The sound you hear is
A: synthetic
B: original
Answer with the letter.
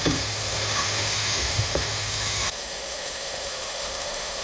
A